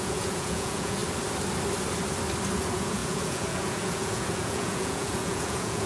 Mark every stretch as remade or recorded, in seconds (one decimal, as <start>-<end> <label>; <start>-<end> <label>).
0.0-1.0 remade; 1.0-2.5 recorded; 2.5-5.9 remade